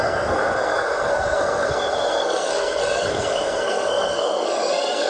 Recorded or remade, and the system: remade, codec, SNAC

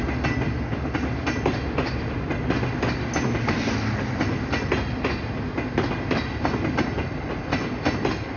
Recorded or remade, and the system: recorded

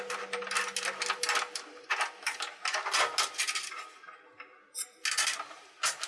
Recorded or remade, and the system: recorded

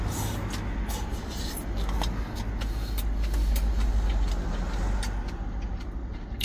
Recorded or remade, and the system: recorded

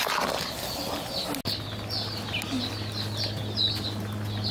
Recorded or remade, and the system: recorded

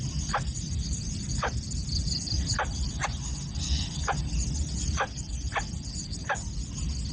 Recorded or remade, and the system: recorded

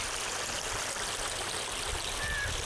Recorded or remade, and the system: recorded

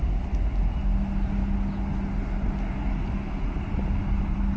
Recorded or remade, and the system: recorded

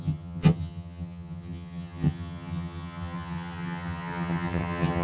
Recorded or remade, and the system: remade, vocoder, HiFi-GAN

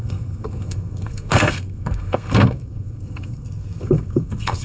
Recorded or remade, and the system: remade, codec, SNAC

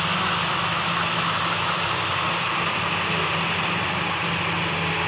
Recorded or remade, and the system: recorded